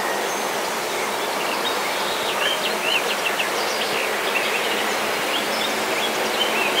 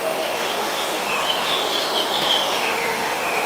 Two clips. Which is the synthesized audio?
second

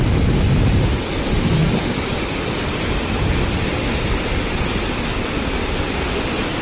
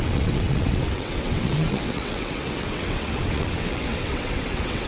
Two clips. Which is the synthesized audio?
second